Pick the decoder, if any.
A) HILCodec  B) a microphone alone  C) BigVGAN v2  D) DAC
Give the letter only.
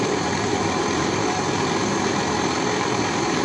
C